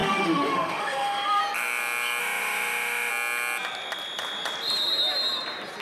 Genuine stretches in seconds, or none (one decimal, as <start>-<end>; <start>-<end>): 1.4-2.2; 3.1-5.8